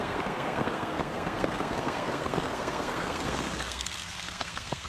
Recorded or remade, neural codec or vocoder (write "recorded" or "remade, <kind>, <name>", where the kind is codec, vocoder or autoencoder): remade, codec, SNAC